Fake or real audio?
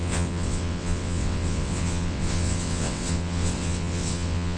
fake